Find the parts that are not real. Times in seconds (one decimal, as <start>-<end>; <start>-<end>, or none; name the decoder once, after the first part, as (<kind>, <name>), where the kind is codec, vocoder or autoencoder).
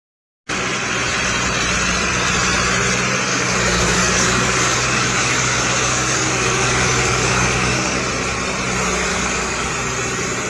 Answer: 3.3-8.0 (codec, DAC); 9.1-9.7